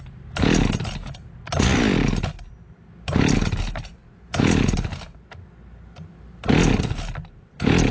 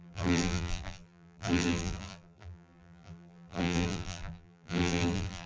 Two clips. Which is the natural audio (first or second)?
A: first